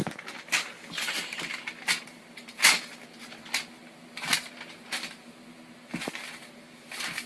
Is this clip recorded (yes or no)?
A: yes